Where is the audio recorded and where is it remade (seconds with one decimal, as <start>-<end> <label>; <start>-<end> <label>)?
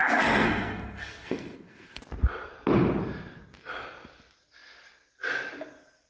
0.0-2.0 remade; 2.0-6.1 recorded